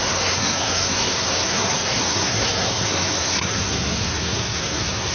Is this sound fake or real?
fake